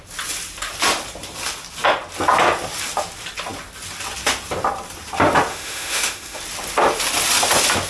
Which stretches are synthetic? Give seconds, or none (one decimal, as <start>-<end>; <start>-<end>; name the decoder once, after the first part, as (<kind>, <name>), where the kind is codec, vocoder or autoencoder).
5.5-6.4 (autoencoder, DAC-VAE)